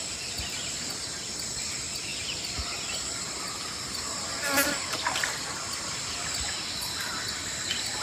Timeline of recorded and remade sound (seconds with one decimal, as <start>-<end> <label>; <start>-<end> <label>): 0.0-8.0 recorded